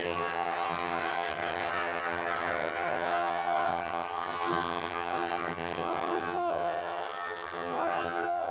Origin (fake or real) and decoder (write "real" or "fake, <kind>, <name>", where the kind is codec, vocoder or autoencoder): fake, vocoder, HiFi-GAN